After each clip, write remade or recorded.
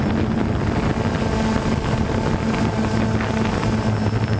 recorded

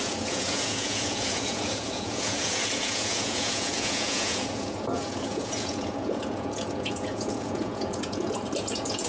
remade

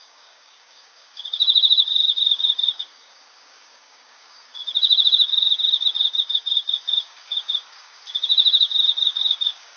remade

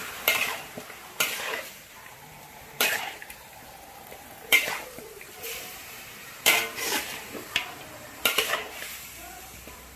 remade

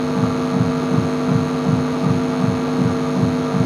recorded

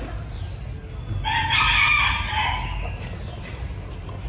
recorded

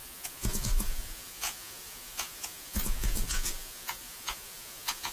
remade